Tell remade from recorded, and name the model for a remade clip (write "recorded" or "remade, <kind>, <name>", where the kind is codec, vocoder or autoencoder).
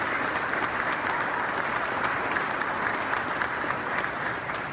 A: recorded